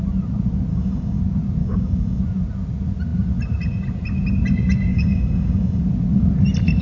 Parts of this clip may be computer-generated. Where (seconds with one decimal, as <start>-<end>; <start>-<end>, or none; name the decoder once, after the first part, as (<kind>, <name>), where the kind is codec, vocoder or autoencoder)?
0.7-1.2 (codec, DAC); 1.6-2.2; 4.9-5.8